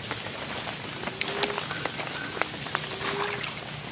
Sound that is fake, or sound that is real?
real